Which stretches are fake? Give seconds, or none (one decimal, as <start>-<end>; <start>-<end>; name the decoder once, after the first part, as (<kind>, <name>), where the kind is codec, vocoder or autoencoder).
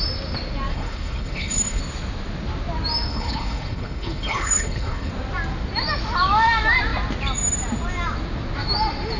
0.7-1.8 (codec, HILCodec); 3.1-5.1